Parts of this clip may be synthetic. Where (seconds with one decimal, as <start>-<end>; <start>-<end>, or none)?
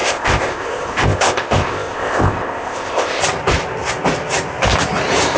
0.0-3.2